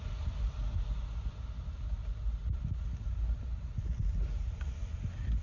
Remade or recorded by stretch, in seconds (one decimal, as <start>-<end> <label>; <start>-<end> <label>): 0.0-5.4 recorded